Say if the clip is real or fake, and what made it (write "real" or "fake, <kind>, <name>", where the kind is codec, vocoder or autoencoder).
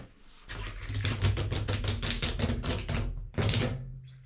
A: real